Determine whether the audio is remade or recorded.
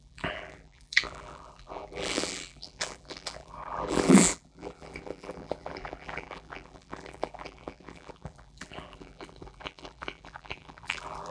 remade